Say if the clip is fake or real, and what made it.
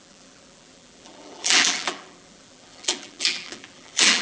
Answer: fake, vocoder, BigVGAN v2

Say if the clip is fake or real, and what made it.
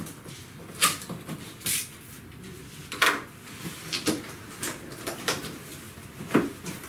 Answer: fake, vocoder, BigVGAN v2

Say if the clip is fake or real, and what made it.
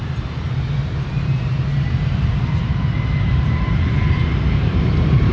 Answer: fake, vocoder, BigVGAN v2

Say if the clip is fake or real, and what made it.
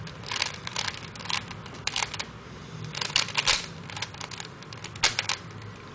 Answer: fake, vocoder, BigVGAN v2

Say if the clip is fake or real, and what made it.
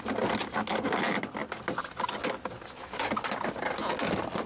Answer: real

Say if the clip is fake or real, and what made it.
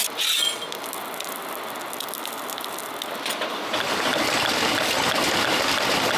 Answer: real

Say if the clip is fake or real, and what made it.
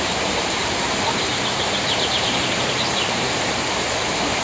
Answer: fake, vocoder, BigVGAN v2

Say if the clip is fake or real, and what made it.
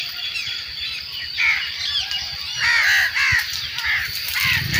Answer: real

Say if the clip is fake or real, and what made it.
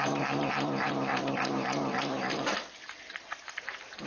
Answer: fake, vocoder, BigVGAN v2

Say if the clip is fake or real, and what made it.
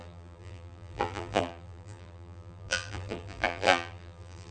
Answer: fake, vocoder, BigVGAN v2